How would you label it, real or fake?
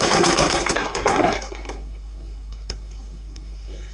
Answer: fake